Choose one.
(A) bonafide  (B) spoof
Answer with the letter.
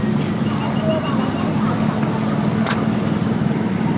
A